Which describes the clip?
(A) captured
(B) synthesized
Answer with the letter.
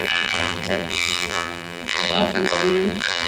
B